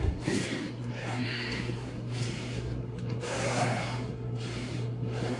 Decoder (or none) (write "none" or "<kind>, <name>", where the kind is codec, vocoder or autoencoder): codec, SNAC